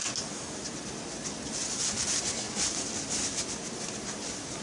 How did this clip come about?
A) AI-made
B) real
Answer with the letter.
B